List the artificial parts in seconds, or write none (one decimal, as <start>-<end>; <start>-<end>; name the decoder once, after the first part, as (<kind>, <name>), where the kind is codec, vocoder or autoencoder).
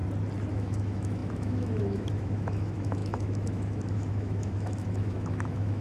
0.5-5.8 (autoencoder, DAC-VAE)